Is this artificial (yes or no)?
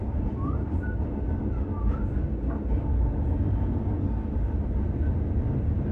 no